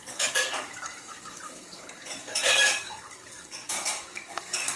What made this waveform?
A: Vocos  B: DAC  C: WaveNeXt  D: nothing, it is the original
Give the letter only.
B